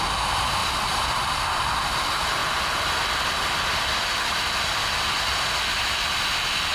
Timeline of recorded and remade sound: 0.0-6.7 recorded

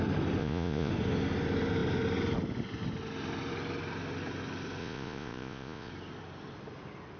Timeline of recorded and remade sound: 0.0-0.4 recorded; 0.4-0.9 remade; 0.9-4.8 recorded; 4.8-5.9 remade; 5.9-7.2 recorded

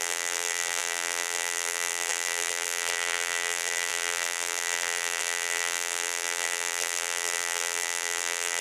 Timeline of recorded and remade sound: 0.0-8.6 remade